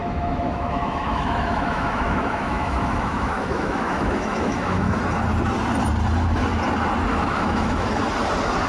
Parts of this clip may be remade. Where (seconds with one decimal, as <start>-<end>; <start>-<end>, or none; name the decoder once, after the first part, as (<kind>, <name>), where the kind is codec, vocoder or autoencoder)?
0.0-5.0 (autoencoder, DAC-VAE); 7.1-7.9